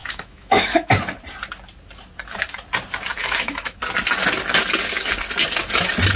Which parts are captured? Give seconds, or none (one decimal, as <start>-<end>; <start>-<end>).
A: 0.9-3.2; 3.8-6.2